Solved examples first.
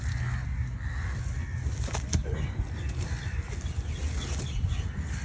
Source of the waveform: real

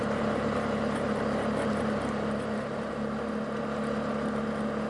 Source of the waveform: real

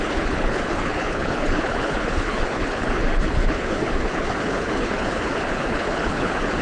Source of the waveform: fake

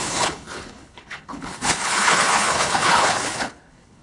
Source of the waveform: fake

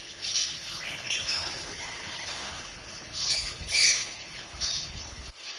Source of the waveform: fake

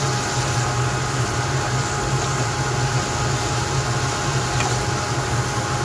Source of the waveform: real